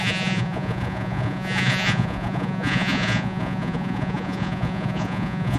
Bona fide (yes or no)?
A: no